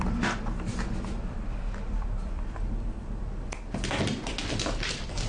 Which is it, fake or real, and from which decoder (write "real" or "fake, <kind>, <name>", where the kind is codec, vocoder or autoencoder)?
fake, vocoder, BigVGAN v2